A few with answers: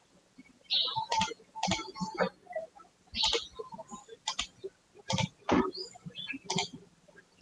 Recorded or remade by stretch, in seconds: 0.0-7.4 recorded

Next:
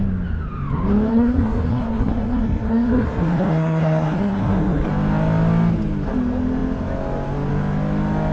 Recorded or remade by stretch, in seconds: 0.0-1.1 recorded; 1.1-4.9 remade; 4.9-8.3 recorded

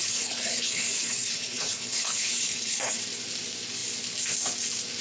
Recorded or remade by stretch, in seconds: 0.0-3.0 remade; 3.0-5.0 recorded

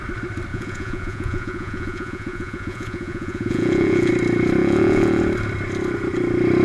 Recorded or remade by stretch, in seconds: 0.0-0.5 recorded; 0.5-4.1 remade; 4.1-4.6 recorded; 4.6-5.2 remade; 5.2-6.6 recorded

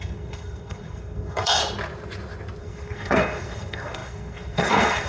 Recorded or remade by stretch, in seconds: 0.0-1.6 remade; 1.6-2.6 recorded; 2.6-5.1 remade

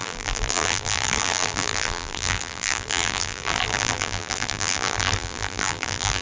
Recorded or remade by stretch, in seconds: 0.0-6.2 remade

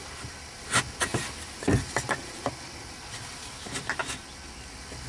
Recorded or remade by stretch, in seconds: 0.0-5.1 recorded